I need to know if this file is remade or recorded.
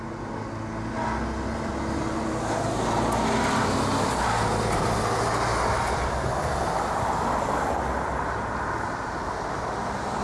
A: recorded